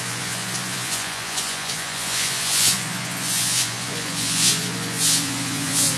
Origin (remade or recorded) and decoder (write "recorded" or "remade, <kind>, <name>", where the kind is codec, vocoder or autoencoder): remade, vocoder, Vocos